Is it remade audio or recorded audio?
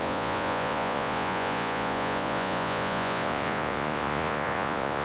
remade